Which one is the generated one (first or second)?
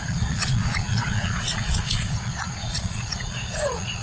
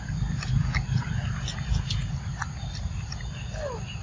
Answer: first